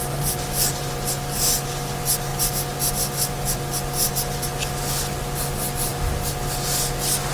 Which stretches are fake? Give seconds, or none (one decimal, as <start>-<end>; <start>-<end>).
none